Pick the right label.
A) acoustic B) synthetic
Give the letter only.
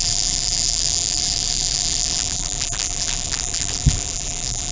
B